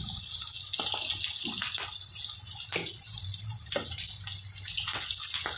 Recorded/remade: recorded